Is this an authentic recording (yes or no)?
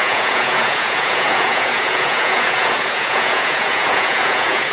no